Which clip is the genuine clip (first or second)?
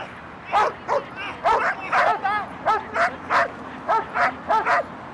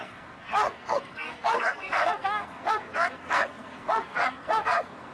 first